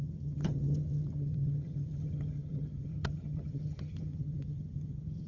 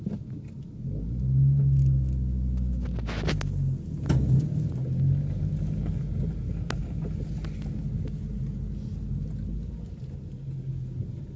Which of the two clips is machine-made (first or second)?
first